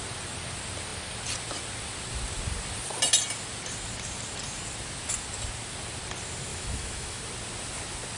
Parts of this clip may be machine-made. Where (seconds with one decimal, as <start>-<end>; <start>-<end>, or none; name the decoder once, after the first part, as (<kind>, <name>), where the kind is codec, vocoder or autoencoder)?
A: 6.5-7.2 (autoencoder, DAC-VAE)